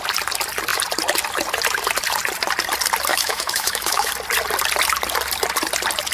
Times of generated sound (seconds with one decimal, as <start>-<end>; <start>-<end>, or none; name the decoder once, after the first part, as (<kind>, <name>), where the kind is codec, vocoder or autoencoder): 3.1-4.1 (autoencoder, DAC-VAE)